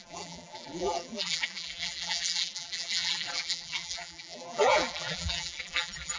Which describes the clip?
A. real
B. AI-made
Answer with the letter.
B